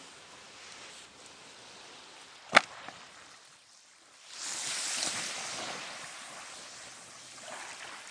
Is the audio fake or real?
real